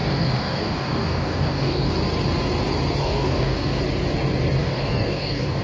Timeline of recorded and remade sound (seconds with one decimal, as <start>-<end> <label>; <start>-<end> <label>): 0.0-1.9 remade; 1.9-3.0 recorded; 3.0-3.8 remade; 3.8-4.6 recorded; 4.6-5.6 remade

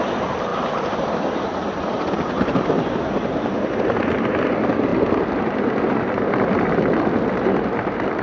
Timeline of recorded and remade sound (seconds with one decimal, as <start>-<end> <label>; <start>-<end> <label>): 0.0-8.2 recorded

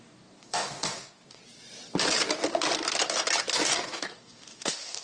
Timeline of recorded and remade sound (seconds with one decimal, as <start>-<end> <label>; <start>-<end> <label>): 0.0-1.4 remade; 1.4-3.5 recorded; 3.5-5.0 remade

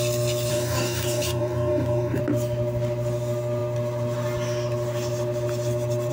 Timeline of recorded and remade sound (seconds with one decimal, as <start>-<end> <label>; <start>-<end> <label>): 0.0-0.5 recorded; 0.5-2.2 remade; 2.2-6.1 recorded

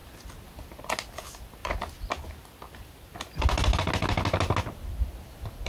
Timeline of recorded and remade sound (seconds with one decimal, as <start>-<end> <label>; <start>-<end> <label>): 0.0-5.7 recorded

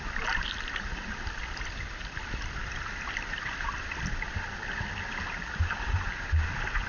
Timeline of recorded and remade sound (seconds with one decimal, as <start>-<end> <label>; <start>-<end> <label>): 0.0-6.9 recorded